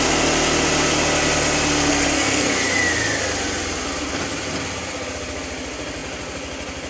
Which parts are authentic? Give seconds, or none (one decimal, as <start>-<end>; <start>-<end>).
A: 0.0-1.9; 2.5-6.9